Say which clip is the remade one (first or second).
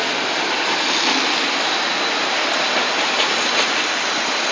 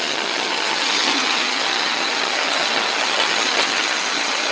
second